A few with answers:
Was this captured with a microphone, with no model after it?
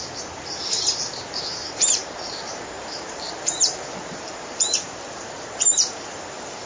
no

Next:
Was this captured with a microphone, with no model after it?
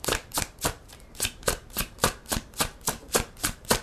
no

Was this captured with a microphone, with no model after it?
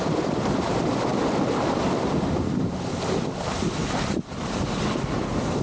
yes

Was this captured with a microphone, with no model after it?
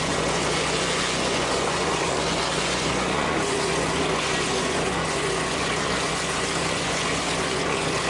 no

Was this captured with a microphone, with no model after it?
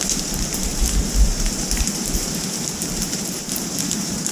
no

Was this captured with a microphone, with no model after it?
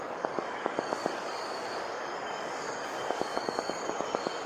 no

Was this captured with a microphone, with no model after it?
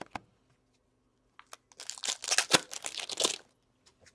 yes